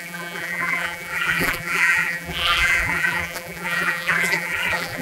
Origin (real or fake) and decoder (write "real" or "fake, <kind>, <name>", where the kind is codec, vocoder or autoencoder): fake, vocoder, BigVGAN v2